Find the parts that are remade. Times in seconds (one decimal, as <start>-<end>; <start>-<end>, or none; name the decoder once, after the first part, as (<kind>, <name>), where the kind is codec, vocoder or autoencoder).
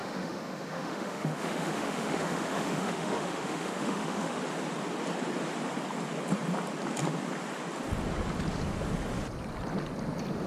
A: 0.0-4.4 (autoencoder, DAC-VAE)